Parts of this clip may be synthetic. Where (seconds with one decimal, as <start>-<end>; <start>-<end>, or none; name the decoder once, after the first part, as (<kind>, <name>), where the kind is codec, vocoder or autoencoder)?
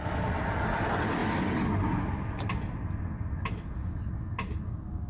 none